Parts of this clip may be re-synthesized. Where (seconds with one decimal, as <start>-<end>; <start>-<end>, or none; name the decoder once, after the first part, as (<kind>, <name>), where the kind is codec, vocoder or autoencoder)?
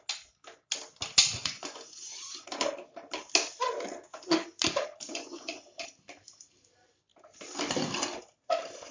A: 1.4-2.2 (vocoder, Vocos); 5.1-5.6